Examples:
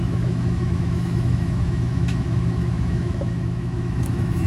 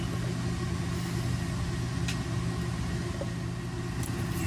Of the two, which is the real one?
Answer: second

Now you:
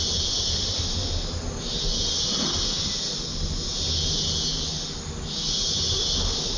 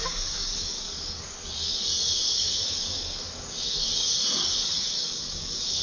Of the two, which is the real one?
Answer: first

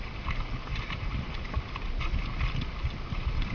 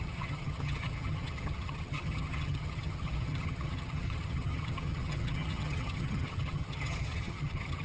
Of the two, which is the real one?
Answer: first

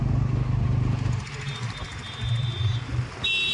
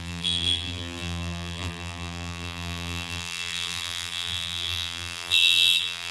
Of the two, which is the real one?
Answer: first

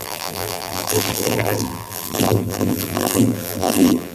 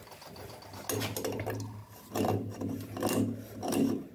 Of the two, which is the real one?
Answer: second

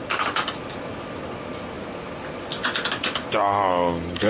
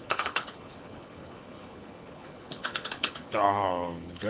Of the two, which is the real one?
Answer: first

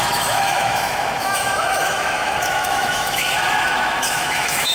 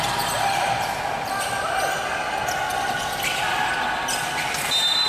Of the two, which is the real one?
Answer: second